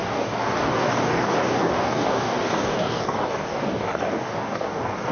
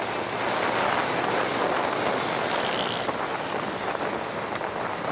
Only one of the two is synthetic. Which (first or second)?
first